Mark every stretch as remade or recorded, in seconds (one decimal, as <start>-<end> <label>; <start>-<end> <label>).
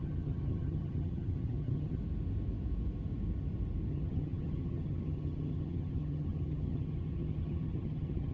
0.0-2.0 remade; 2.0-3.9 recorded; 3.9-8.3 remade